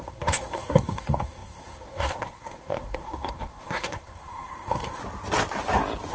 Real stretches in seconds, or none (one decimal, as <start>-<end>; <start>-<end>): 5.0-6.1